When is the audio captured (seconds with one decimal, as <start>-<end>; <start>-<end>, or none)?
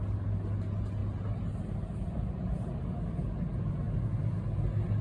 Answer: 0.0-5.0